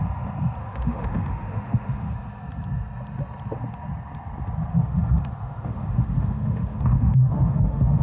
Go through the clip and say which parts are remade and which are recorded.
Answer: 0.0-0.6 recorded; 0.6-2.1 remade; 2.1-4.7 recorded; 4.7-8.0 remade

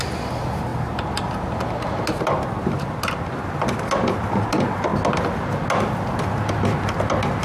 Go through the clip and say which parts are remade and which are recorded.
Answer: 0.0-7.4 recorded